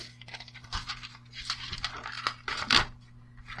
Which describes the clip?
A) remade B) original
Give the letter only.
B